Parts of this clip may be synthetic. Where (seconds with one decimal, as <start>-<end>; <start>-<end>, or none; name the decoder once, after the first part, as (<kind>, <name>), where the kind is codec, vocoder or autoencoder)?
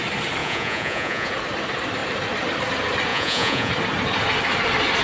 0.4-1.3 (vocoder, Vocos); 3.1-3.7